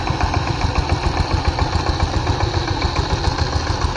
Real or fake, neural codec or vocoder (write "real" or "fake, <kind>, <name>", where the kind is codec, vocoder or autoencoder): real